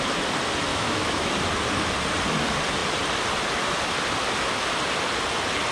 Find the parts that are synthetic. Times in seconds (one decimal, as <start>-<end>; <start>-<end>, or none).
0.7-1.3